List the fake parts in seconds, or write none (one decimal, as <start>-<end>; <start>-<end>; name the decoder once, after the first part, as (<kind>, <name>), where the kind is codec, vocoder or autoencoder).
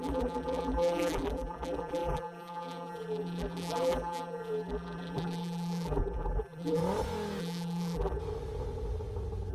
0.0-6.8 (vocoder, BigVGAN v2); 7.4-8.2